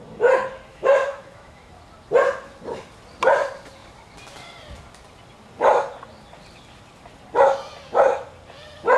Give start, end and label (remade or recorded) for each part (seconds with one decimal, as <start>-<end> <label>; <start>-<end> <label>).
0.0-0.7 recorded; 0.7-1.7 remade; 1.7-9.0 recorded